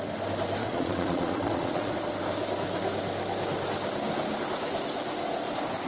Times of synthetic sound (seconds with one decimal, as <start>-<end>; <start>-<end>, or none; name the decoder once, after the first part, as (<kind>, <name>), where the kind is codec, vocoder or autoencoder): 0.6-1.9 (vocoder, Vocos)